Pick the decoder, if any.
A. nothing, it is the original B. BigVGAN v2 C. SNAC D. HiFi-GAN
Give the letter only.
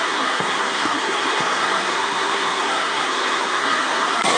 C